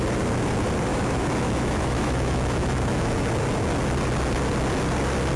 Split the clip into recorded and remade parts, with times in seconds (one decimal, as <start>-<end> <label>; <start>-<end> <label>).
0.0-0.9 recorded; 0.9-3.2 remade; 3.2-5.4 recorded